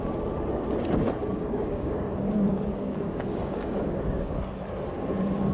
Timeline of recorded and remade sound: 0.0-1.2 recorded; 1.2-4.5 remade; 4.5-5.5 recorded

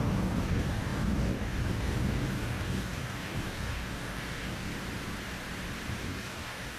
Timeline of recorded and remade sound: 0.0-4.7 remade; 4.7-6.0 recorded; 6.0-6.8 remade

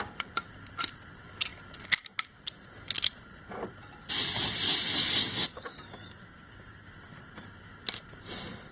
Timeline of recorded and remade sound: 0.0-5.2 recorded; 5.2-6.9 remade; 6.9-8.7 recorded

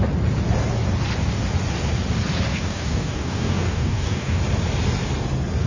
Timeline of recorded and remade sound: 0.0-2.5 recorded; 2.5-4.4 remade; 4.4-5.7 recorded

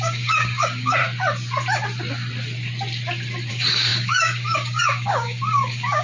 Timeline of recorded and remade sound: 0.0-1.0 remade; 1.0-3.5 recorded; 3.5-6.0 remade

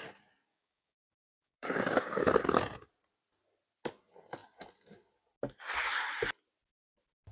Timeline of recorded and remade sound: 0.0-0.5 recorded; 0.5-2.3 remade; 2.3-7.3 recorded